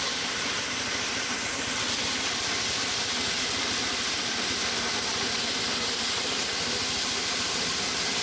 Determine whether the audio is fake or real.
real